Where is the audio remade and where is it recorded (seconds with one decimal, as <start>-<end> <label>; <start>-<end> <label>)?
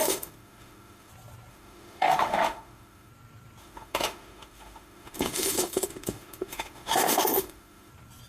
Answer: 0.0-1.1 remade; 1.1-1.5 recorded; 1.5-3.1 remade; 3.1-3.6 recorded; 3.6-7.9 remade; 7.9-8.3 recorded